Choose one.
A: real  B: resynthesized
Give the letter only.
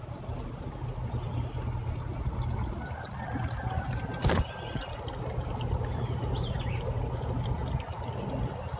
A